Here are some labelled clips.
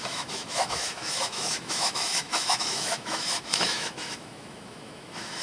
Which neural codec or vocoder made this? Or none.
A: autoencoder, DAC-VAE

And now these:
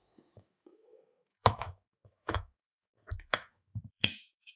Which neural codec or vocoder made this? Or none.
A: autoencoder, DAC-VAE